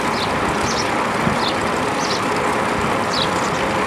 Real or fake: real